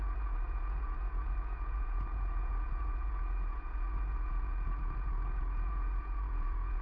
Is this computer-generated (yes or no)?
yes